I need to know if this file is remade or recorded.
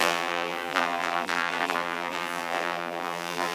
remade